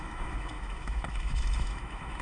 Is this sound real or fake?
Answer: fake